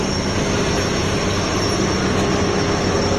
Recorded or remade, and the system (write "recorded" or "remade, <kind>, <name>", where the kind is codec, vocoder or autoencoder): recorded